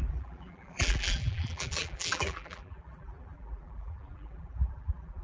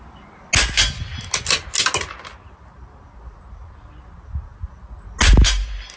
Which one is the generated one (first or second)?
first